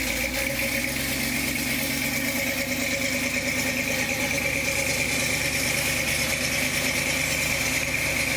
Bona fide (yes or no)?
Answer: yes